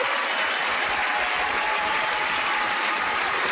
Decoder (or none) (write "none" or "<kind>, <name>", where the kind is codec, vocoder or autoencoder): none